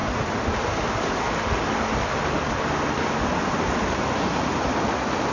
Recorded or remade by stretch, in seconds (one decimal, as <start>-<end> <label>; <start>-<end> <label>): 0.0-3.2 recorded; 3.2-5.3 remade